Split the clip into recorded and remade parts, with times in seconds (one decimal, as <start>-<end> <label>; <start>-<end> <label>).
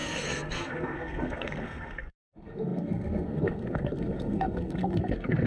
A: 0.0-5.5 remade